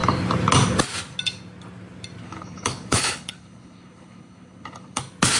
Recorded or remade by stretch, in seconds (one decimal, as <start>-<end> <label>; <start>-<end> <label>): 0.0-2.2 recorded; 2.2-5.0 remade; 5.0-5.4 recorded

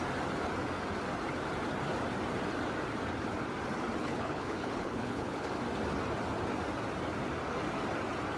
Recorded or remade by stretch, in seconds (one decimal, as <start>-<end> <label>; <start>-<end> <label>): 0.0-4.0 recorded; 4.0-5.5 remade; 5.5-8.4 recorded

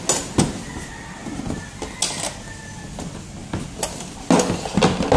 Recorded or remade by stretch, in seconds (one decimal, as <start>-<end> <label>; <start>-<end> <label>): 0.0-5.2 recorded